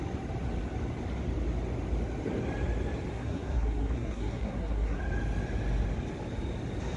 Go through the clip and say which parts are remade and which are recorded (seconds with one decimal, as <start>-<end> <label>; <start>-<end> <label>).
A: 0.0-3.1 recorded; 3.1-5.0 remade; 5.0-7.0 recorded